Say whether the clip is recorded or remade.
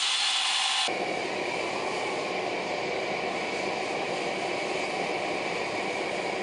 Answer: recorded